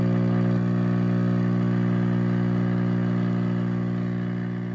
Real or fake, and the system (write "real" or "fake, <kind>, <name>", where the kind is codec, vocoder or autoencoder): real